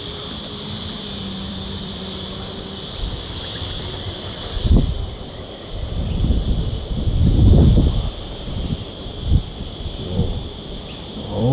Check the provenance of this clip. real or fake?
fake